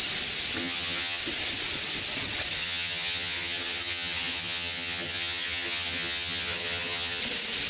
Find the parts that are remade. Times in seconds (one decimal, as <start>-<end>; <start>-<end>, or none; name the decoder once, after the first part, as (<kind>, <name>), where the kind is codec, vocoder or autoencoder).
0.6-1.2 (vocoder, HiFi-GAN); 2.6-7.2